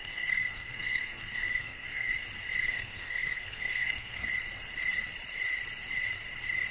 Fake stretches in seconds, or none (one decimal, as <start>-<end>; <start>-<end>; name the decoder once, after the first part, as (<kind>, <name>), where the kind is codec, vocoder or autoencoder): 0.0-2.1 (codec, SNAC); 2.6-4.3

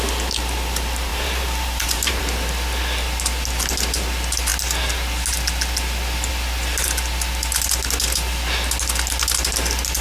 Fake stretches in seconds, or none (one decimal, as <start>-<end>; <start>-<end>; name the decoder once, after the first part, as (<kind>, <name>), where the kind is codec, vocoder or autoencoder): 1.1-2.2 (vocoder, BigVGAN v2)

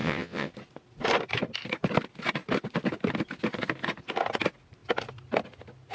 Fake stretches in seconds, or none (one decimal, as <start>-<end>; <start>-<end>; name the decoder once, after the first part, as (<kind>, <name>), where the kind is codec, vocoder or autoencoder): 0.0-0.5 (vocoder, WaveNeXt)

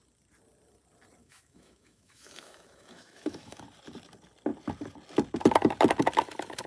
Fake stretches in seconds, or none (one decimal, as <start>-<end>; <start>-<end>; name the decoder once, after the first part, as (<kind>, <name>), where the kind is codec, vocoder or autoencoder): 1.2-3.6 (autoencoder, DAC-VAE)